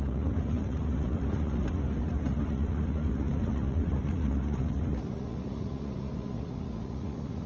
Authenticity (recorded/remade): remade